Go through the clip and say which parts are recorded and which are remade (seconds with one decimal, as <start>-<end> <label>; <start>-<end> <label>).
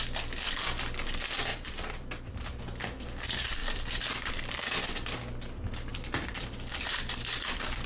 0.0-1.5 recorded; 1.5-2.6 remade; 2.6-3.6 recorded; 3.6-4.3 remade; 4.3-5.9 recorded; 5.9-7.9 remade